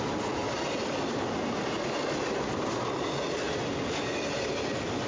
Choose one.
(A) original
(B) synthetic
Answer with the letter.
A